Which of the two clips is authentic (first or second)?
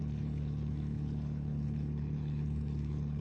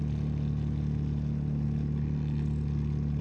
second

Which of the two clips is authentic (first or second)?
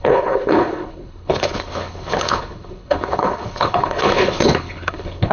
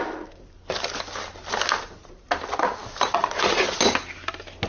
second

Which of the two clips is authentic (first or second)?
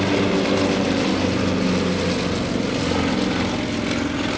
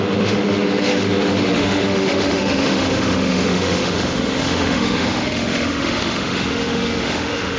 first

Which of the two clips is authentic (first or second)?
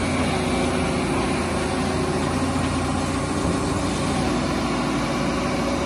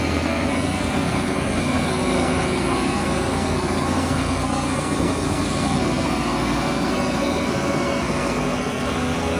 first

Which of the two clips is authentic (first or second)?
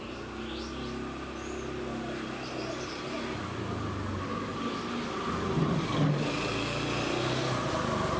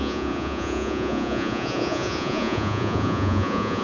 first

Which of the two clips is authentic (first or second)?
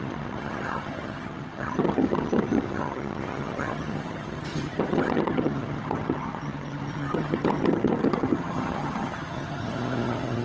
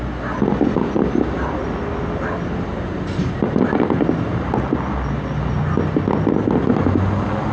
second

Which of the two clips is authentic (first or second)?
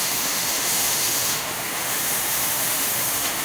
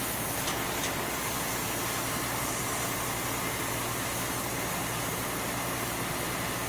second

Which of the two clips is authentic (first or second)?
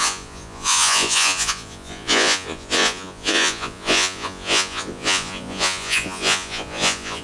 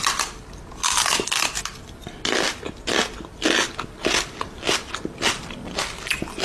second